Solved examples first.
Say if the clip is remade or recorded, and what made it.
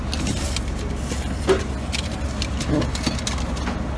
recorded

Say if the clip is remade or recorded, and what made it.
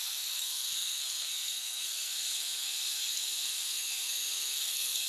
remade, codec, SNAC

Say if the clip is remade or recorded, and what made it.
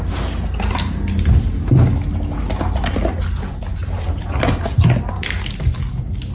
recorded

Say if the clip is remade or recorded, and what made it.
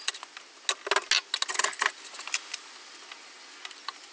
recorded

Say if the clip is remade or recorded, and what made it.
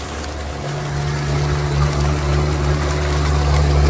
recorded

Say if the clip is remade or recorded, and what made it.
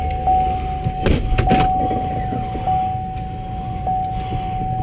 recorded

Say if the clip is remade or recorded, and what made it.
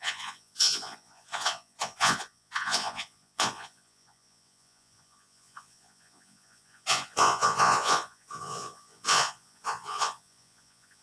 remade, vocoder, Vocos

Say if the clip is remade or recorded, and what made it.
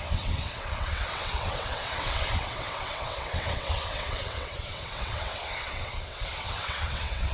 remade, vocoder, WaveNeXt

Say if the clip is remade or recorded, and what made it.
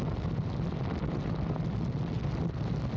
recorded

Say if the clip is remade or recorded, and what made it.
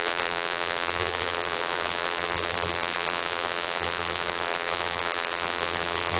remade, vocoder, BigVGAN v2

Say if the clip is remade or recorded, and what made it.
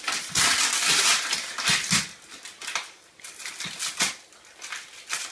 recorded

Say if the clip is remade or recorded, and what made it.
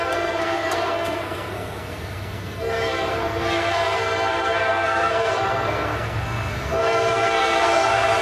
remade, codec, SNAC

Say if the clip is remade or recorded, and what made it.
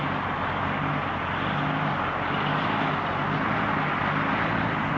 recorded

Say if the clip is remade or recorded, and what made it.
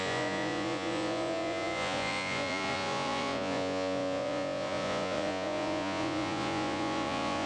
remade, vocoder, Vocos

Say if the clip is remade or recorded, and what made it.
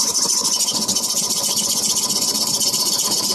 remade, vocoder, Vocos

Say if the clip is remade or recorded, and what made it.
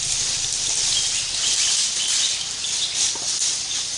recorded